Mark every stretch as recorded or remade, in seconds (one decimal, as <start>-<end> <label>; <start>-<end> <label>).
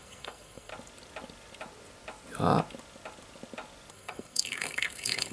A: 0.0-0.7 remade; 0.7-3.9 recorded; 3.9-5.3 remade